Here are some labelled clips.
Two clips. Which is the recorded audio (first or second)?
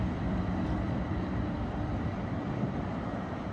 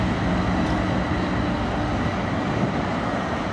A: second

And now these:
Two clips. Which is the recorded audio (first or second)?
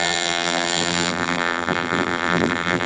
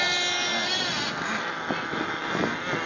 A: second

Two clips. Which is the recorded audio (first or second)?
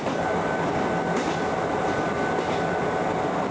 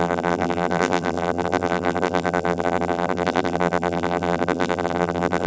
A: first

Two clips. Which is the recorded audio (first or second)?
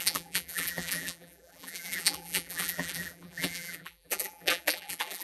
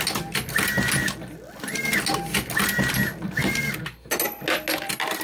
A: second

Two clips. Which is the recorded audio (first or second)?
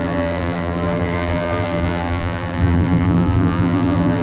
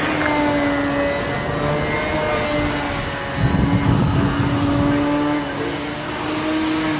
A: second